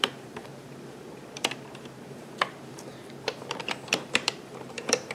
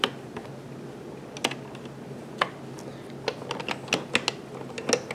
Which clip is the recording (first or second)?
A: second